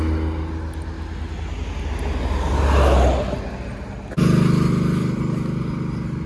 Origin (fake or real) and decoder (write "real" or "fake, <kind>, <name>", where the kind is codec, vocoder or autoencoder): real